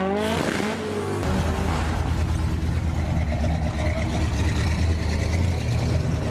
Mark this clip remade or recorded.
recorded